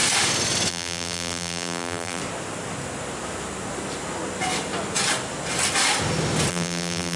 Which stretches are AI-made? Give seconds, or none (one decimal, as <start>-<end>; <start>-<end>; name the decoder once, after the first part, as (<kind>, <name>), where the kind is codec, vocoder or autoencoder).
0.7-2.2 (vocoder, BigVGAN v2); 6.5-7.2